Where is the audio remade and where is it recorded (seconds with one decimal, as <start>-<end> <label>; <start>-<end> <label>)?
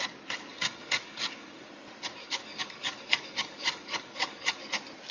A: 0.0-0.5 recorded; 0.5-1.7 remade; 1.7-2.2 recorded; 2.2-4.6 remade; 4.6-5.1 recorded